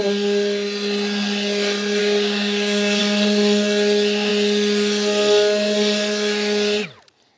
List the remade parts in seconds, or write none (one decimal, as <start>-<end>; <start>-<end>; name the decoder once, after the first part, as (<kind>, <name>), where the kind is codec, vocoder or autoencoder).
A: 2.0-3.0 (codec, DAC)